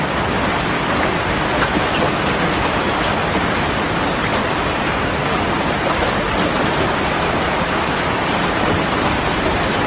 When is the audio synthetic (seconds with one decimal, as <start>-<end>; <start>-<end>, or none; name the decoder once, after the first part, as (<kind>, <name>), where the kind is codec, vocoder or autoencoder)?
3.2-7.9 (vocoder, BigVGAN v2)